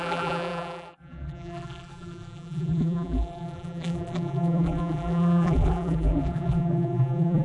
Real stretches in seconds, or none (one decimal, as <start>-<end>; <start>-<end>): none